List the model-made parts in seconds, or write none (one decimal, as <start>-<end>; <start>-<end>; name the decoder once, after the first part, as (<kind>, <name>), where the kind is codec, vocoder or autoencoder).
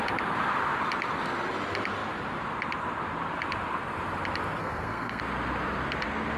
4.6-5.2 (codec, SNAC)